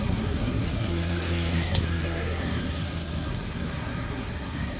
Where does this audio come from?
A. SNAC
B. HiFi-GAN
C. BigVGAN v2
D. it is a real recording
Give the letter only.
A